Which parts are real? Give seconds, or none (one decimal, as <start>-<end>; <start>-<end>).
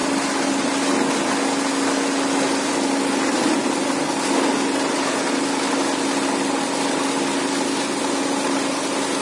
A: 0.0-9.2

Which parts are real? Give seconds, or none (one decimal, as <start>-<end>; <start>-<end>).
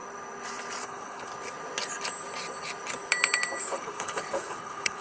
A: 0.0-0.8; 1.3-3.6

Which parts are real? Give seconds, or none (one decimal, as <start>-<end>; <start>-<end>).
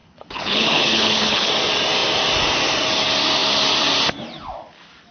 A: 1.5-5.1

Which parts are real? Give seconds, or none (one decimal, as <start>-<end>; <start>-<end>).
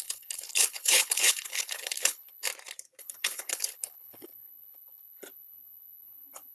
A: 2.5-3.0